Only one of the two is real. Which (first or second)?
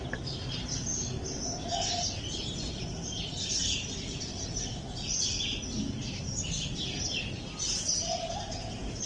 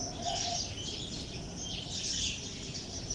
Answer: first